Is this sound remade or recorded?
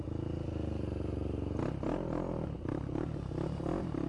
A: recorded